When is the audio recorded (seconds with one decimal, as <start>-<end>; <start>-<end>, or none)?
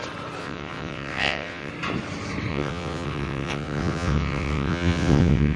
0.0-0.4; 1.7-2.5